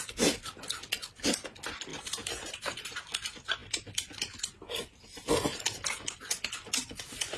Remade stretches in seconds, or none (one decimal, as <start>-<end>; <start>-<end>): 1.9-3.0